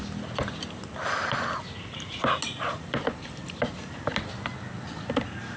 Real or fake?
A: real